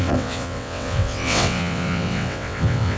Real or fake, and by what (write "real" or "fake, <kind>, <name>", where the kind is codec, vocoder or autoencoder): fake, vocoder, WaveNeXt